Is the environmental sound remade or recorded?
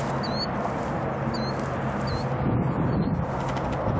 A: recorded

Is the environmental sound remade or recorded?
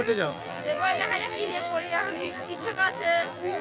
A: remade